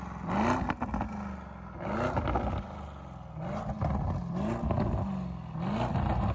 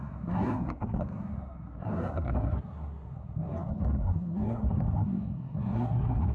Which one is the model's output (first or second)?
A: second